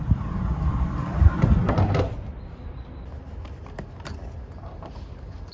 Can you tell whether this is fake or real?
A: real